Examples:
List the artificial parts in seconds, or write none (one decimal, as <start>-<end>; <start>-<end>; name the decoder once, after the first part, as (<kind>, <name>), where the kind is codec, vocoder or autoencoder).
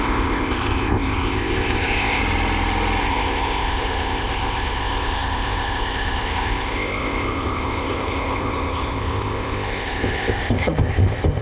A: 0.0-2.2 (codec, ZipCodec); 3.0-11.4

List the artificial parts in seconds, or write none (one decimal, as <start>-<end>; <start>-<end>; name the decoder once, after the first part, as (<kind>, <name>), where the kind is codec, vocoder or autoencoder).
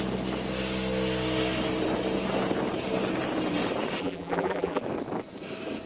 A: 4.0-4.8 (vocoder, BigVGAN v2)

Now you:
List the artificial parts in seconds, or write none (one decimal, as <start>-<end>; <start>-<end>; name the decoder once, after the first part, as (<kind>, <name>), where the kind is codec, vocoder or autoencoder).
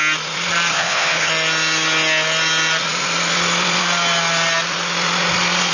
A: 0.7-1.3 (codec, HILCodec)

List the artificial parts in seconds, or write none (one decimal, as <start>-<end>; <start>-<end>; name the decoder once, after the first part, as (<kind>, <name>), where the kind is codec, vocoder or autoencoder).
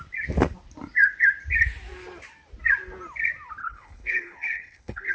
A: 3.6-5.1 (codec, HILCodec)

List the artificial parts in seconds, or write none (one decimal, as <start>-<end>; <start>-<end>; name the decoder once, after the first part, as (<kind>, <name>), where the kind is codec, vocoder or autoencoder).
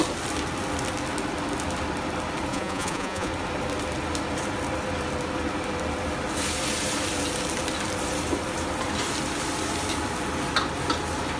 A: 2.5-3.3 (vocoder, Vocos)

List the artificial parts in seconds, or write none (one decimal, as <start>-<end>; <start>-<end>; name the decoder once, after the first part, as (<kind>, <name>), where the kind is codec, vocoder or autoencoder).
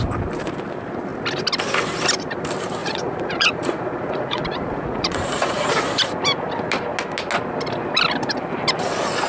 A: 2.8-5.9 (vocoder, Vocos)